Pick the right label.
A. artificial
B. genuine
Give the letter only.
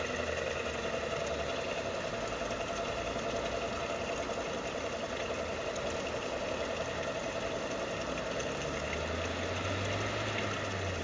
B